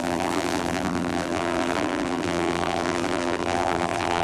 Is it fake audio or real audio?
fake